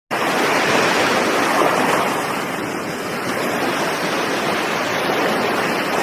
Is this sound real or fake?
real